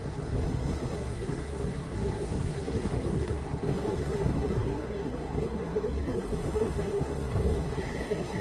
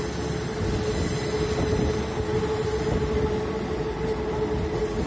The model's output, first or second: first